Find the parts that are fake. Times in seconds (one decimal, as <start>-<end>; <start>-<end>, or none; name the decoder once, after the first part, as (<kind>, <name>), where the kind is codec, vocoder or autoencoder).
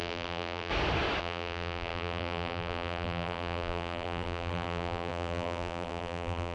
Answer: 0.0-0.7 (vocoder, BigVGAN v2); 1.2-6.5